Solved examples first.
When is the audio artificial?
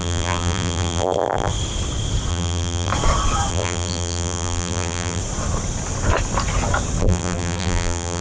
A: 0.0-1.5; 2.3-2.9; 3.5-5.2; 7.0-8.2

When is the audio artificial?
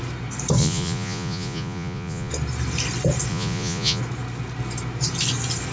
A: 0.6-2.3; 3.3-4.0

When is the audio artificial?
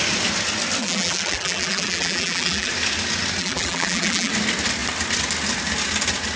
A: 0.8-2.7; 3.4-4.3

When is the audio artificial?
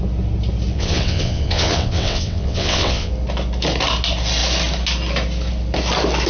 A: 0.7-3.1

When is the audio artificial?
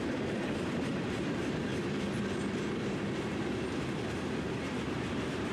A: 0.0-1.7; 5.0-5.5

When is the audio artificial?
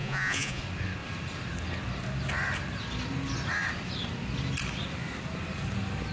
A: 0.0-0.6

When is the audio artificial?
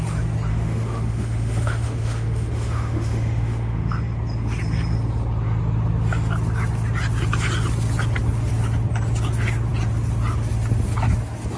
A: 0.5-3.9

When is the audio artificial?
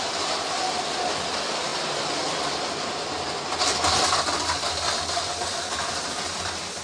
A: none